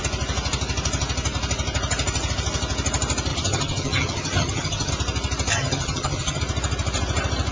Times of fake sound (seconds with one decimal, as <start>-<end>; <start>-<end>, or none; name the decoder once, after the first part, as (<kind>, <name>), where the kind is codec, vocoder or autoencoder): 3.3-4.9 (vocoder, HiFi-GAN); 5.5-6.4